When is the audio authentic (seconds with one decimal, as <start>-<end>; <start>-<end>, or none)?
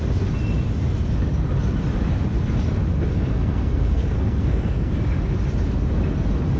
0.0-3.1; 4.9-6.6